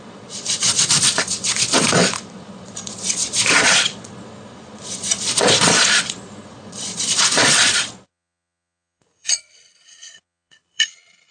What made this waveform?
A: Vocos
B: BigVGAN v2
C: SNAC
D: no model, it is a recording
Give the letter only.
A